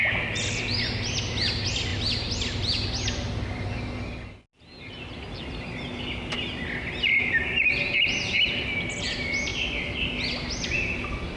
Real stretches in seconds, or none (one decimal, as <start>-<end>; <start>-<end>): 0.0-11.4